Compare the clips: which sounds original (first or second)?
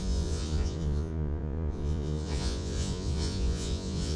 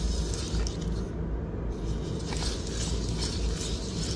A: second